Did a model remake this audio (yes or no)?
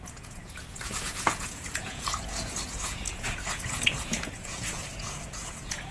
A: yes